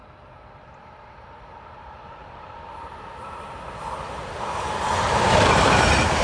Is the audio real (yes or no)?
no